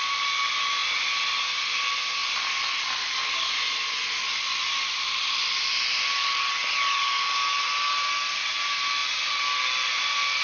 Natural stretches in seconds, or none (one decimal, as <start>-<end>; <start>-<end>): 0.0-10.4